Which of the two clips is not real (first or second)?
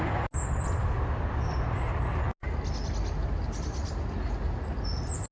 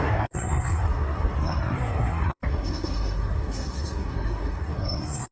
second